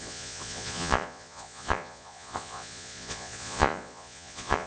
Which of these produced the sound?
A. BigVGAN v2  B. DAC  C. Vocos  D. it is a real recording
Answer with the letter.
C